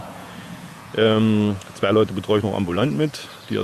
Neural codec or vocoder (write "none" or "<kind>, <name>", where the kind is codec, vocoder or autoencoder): vocoder, Vocos